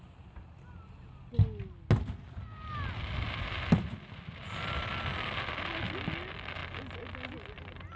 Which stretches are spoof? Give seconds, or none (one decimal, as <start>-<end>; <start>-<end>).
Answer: none